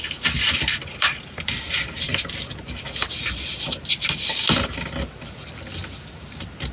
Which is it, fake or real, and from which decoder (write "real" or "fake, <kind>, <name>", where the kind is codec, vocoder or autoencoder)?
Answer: real